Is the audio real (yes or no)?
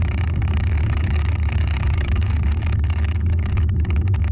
no